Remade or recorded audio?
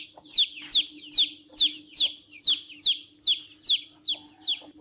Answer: recorded